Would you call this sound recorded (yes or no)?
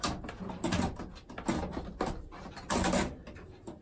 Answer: yes